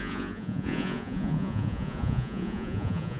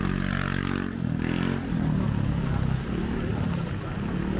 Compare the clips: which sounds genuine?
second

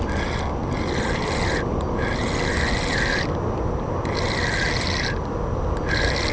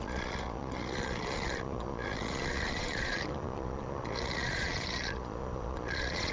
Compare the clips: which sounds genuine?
first